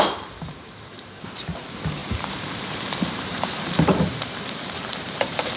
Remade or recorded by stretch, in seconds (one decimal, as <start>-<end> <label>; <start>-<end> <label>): 0.0-5.6 remade